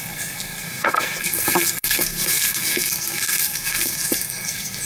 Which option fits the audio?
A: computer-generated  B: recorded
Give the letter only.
A